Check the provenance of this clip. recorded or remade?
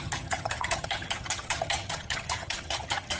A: remade